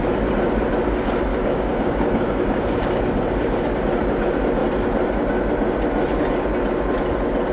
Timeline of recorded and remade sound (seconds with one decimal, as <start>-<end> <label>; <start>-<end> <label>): 0.0-1.3 recorded; 1.3-3.0 remade; 3.0-7.5 recorded